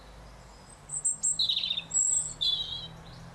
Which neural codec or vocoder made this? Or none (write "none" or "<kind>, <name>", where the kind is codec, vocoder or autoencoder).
none